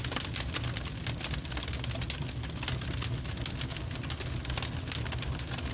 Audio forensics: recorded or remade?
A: recorded